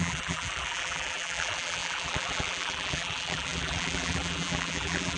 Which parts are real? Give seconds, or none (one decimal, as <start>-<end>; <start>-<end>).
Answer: none

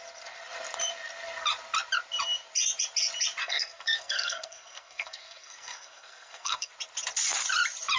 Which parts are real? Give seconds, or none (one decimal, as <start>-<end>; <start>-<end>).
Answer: 0.0-3.4; 6.7-8.0

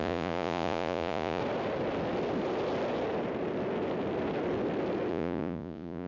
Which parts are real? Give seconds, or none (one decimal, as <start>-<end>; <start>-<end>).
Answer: 1.4-5.1

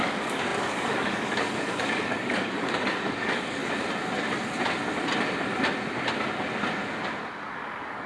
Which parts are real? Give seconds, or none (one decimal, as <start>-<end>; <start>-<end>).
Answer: 3.6-7.3

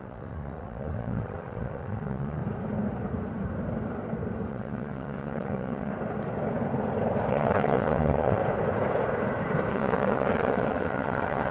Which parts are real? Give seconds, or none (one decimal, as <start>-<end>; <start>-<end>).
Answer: 2.4-4.5; 5.9-7.3; 8.4-9.7

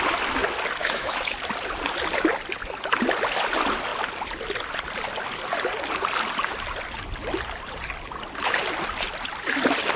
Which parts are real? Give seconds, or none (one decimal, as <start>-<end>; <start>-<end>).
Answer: 0.0-0.8; 1.3-10.0